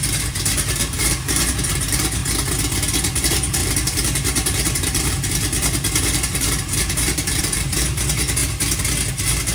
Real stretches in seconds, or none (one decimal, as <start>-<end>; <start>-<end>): 2.2-3.2; 8.4-9.1